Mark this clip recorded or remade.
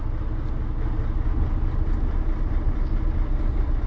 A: recorded